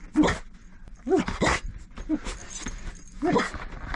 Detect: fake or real real